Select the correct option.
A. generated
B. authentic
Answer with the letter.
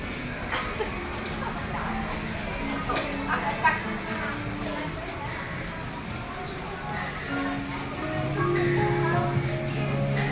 B